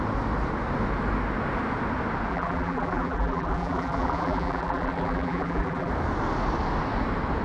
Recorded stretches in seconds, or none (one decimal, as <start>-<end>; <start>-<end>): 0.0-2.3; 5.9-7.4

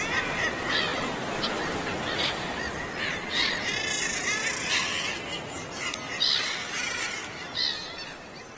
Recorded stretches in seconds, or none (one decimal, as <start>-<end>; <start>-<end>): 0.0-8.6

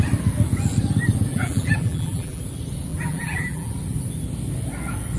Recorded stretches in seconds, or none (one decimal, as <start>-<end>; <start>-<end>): 0.0-1.3; 2.4-2.9; 3.7-5.2

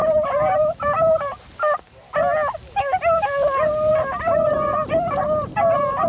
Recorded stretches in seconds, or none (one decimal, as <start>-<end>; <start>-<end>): 1.5-3.9